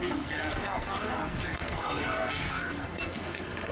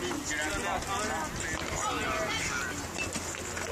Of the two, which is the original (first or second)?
second